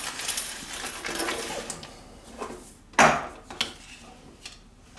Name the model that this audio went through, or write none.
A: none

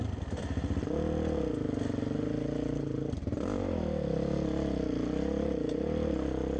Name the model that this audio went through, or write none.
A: none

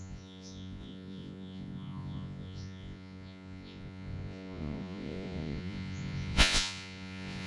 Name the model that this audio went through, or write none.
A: vocoder, Vocos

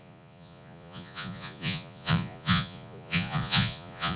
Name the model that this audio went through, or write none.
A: vocoder, Vocos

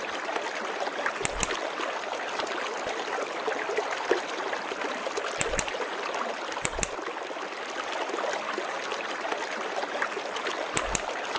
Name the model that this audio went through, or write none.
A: vocoder, BigVGAN v2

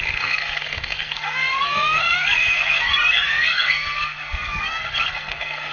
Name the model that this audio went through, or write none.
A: codec, SNAC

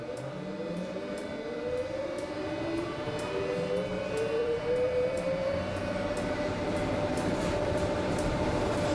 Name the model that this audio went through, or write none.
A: vocoder, BigVGAN v2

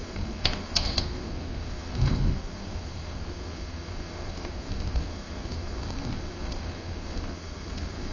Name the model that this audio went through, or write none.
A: codec, SNAC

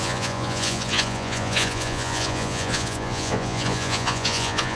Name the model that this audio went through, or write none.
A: vocoder, Vocos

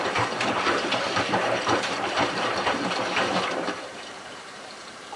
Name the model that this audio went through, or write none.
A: vocoder, BigVGAN v2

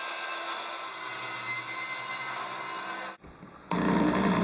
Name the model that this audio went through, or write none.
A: none